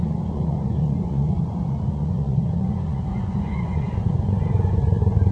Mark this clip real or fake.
fake